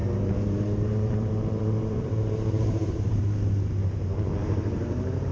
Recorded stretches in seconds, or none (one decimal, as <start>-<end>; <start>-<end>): 3.2-4.4